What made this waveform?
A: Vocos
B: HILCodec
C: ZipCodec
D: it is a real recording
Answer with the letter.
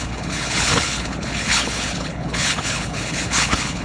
B